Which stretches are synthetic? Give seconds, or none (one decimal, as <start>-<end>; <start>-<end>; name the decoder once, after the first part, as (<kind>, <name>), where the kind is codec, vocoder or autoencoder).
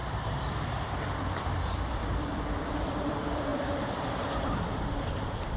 0.0-5.6 (vocoder, BigVGAN v2)